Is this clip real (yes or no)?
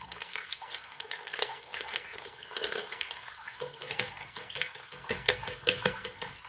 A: no